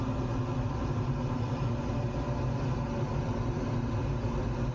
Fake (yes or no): no